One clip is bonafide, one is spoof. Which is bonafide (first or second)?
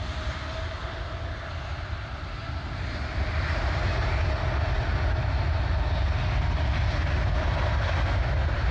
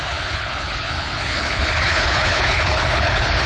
first